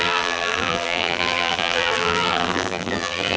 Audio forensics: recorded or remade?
remade